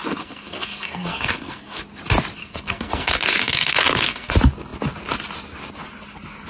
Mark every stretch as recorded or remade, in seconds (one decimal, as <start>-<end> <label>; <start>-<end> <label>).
0.0-1.8 remade; 1.8-2.4 recorded; 2.4-4.3 remade; 4.3-6.5 recorded